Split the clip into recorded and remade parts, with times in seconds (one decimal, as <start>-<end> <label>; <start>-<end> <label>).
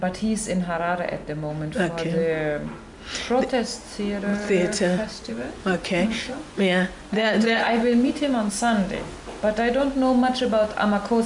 0.0-4.3 recorded; 4.3-8.5 remade; 8.5-11.3 recorded